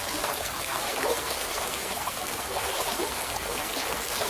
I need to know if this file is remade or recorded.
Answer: remade